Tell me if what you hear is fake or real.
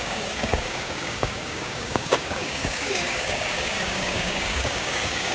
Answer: fake